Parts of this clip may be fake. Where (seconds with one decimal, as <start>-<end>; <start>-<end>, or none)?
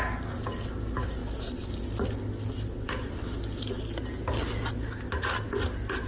none